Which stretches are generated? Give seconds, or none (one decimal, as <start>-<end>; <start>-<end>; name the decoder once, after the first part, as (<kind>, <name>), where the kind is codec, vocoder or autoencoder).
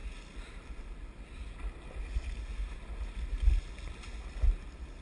none